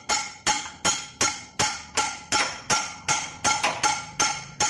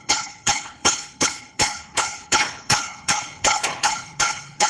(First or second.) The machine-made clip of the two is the second